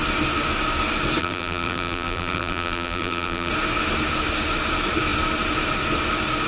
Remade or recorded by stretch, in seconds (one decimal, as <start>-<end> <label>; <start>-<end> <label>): 0.0-1.2 recorded; 1.2-3.5 remade; 3.5-6.5 recorded

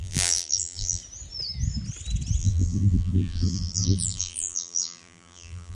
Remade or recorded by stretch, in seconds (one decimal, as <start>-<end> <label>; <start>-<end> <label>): 0.0-1.0 remade; 1.0-2.4 recorded; 2.4-5.7 remade

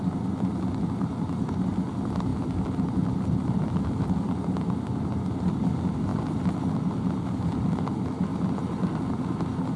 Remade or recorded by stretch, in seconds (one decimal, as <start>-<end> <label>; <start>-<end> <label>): 0.0-9.8 recorded